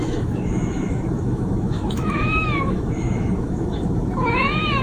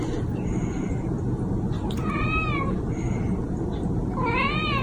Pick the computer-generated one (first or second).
first